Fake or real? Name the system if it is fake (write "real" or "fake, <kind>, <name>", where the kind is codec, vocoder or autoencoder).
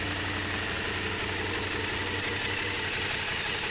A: real